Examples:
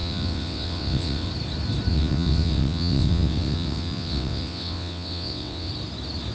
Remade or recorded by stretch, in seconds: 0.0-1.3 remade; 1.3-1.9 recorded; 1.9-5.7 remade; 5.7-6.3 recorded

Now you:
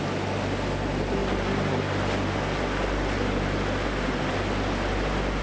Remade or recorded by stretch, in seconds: 0.0-5.4 recorded

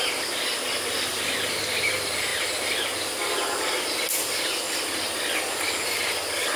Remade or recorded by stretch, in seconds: 0.0-6.6 recorded